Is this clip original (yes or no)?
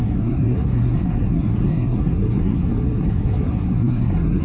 no